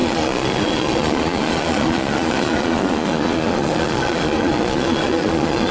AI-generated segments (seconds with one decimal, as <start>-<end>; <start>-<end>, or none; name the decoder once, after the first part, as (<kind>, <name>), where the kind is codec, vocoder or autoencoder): 0.0-5.7 (vocoder, Vocos)